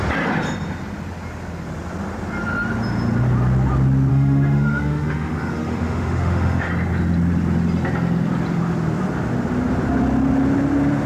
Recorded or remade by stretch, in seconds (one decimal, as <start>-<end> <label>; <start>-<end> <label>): 0.0-4.1 recorded; 4.1-6.7 remade; 6.7-11.1 recorded